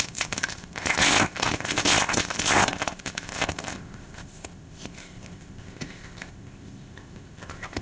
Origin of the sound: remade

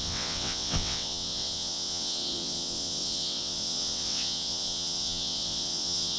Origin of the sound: remade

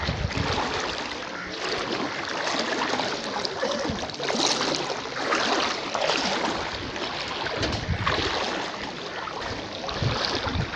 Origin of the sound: recorded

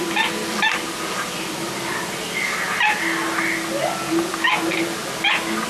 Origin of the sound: recorded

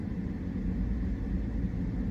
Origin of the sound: recorded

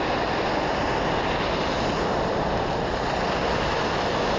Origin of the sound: recorded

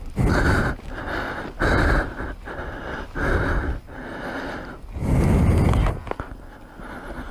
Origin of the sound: recorded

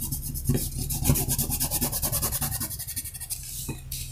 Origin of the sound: recorded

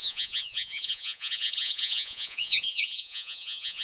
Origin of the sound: remade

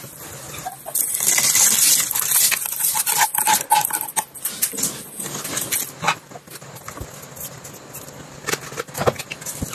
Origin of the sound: recorded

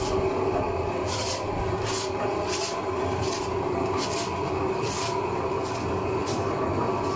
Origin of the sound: recorded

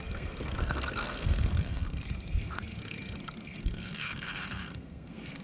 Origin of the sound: remade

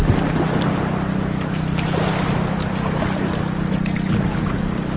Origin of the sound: recorded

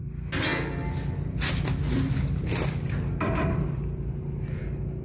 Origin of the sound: recorded